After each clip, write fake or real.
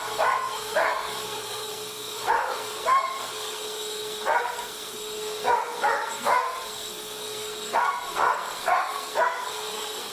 fake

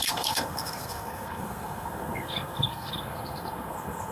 fake